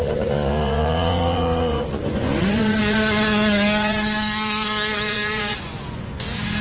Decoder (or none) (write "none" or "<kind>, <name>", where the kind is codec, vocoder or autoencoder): vocoder, Vocos